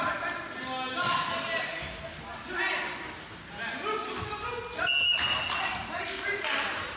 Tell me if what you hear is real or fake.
real